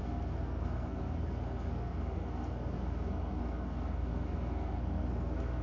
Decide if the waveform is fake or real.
fake